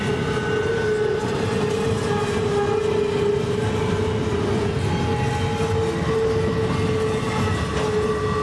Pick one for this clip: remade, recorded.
recorded